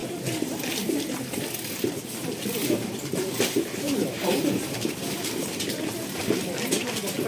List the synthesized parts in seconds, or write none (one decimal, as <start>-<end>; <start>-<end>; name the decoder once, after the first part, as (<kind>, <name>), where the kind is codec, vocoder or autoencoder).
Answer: 2.6-5.6 (vocoder, BigVGAN v2)